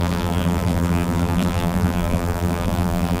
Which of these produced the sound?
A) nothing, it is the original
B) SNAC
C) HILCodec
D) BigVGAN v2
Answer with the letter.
D